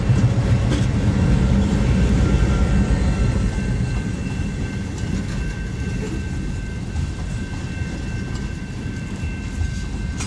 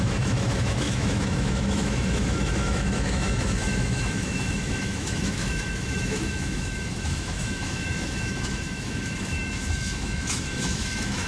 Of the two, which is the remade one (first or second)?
second